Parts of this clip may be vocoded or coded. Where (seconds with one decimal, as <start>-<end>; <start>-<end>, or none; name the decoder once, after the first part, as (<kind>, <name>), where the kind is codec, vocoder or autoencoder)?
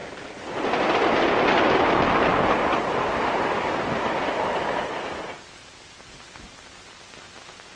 0.0-1.9 (vocoder, BigVGAN v2)